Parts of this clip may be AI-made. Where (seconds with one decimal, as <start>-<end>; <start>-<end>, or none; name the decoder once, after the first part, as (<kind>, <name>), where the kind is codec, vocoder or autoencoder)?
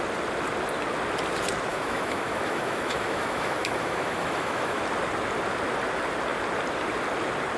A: 1.7-4.8 (autoencoder, DAC-VAE)